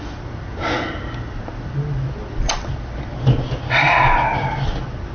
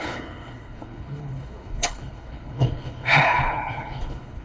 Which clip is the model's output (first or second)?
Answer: second